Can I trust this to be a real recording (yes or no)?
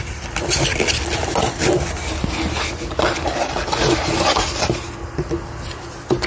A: yes